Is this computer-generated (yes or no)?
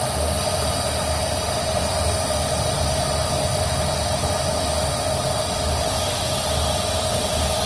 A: no